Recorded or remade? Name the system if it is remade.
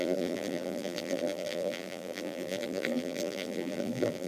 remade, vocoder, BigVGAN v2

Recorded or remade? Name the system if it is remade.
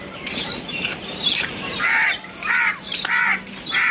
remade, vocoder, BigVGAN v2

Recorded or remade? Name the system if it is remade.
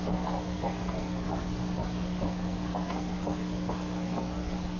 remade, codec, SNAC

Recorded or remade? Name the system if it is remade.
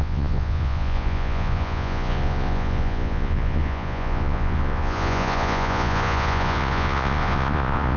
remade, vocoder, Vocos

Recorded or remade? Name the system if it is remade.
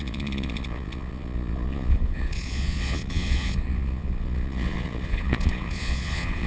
remade, vocoder, Vocos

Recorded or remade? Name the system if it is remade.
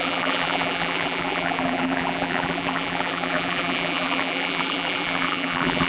remade, vocoder, BigVGAN v2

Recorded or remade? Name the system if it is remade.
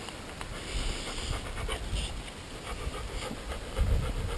recorded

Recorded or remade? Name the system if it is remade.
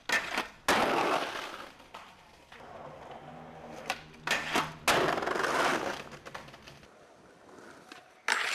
recorded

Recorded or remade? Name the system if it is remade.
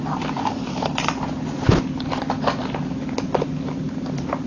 remade, vocoder, BigVGAN v2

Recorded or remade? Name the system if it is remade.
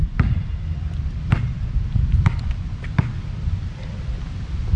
recorded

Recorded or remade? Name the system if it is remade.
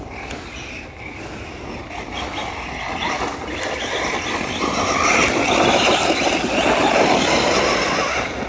recorded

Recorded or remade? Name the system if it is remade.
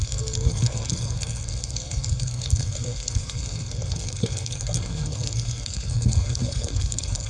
remade, codec, SNAC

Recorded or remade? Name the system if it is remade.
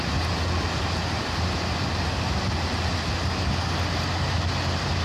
recorded